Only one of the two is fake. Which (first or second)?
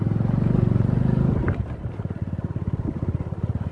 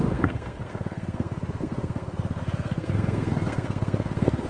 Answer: second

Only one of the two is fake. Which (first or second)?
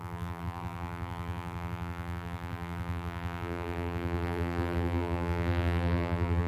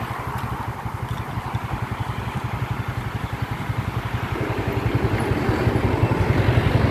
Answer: first